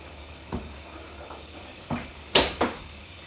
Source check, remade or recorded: remade